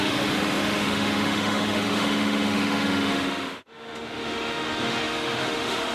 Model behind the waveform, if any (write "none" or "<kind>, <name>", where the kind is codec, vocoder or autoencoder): autoencoder, DAC-VAE